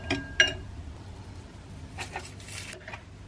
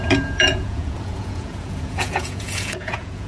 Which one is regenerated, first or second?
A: second